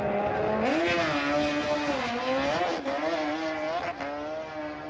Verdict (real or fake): real